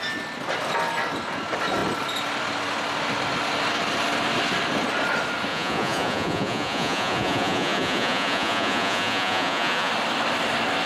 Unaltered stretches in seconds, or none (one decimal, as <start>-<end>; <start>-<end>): 0.0-5.5; 9.9-10.9